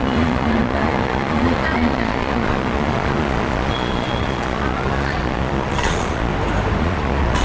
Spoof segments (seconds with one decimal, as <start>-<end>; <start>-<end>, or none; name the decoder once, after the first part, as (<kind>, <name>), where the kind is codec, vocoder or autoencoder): 0.0-6.3 (vocoder, Vocos); 6.8-7.4